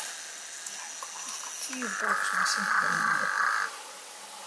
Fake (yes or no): no